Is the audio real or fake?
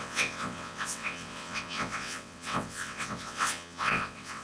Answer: fake